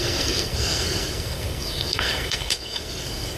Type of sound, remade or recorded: remade